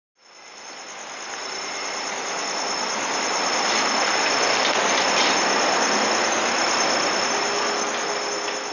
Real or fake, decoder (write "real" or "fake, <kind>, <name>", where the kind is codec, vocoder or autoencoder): real